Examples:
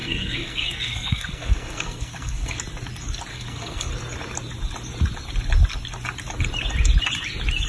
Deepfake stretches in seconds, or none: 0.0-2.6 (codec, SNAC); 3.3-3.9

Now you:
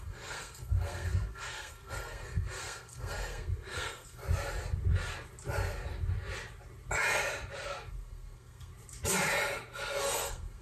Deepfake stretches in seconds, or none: 0.0-4.2 (codec, SNAC); 7.9-8.7; 10.0-10.6

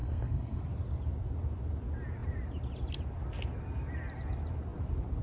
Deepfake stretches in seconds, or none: 0.0-0.6 (codec, SNAC)

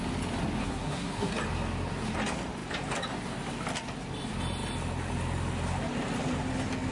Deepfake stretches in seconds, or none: 0.6-1.3 (codec, SNAC)

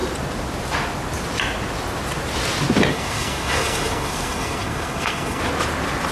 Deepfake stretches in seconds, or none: 2.9-5.4 (codec, SNAC)

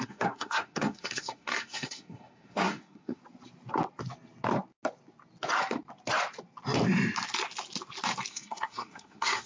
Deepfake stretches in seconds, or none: 0.0-3.2 (codec, SNAC); 8.3-9.5

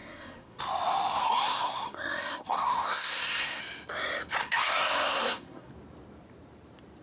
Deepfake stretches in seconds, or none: 0.0-0.6 (codec, SNAC); 1.2-3.6; 4.4-5.7